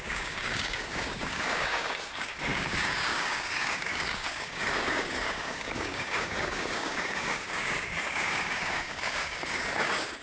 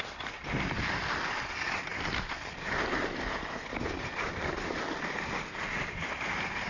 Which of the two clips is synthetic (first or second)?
first